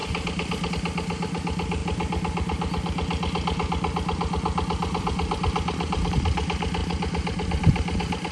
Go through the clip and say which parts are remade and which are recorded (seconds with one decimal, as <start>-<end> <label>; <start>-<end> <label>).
0.0-8.3 recorded